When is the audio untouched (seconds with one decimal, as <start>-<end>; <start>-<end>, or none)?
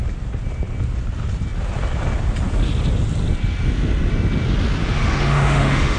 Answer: 0.0-4.8